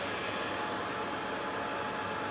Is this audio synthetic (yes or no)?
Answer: no